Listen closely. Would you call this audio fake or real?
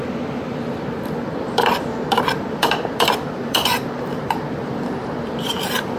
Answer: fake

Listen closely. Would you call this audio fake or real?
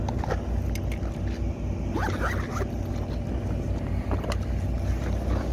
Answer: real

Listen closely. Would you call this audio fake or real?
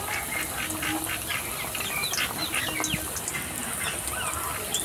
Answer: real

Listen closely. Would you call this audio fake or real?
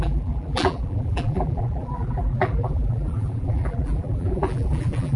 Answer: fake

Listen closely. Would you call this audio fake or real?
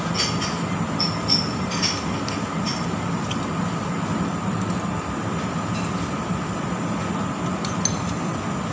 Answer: real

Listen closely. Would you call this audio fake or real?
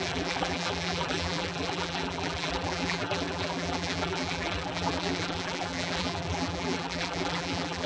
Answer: fake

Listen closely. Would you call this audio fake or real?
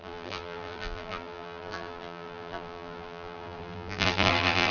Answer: fake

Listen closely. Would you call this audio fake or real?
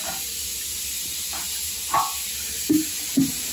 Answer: fake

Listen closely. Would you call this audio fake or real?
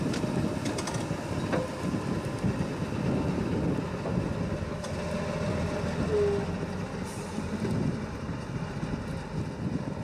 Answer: real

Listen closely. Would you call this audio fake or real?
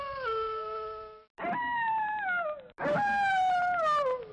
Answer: real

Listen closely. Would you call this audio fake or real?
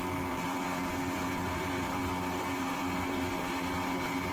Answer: fake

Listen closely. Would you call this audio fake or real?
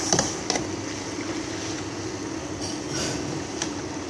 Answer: real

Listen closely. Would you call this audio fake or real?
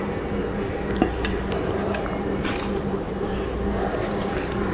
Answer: fake